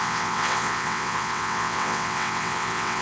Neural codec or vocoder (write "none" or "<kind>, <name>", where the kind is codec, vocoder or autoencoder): vocoder, WaveNeXt